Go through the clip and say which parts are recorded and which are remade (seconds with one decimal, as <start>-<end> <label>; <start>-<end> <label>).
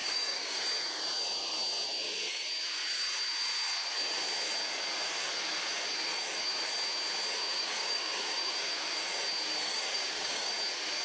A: 0.0-0.6 remade; 0.6-7.6 recorded; 7.6-8.5 remade; 8.5-9.7 recorded; 9.7-10.5 remade; 10.5-11.0 recorded